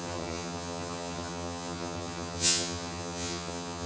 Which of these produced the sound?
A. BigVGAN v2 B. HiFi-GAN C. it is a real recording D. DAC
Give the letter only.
B